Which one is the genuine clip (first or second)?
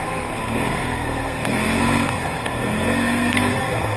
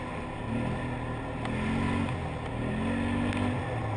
second